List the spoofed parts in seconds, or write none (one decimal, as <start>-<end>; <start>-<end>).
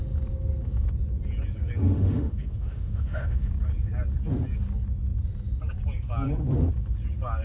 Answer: 1.8-3.5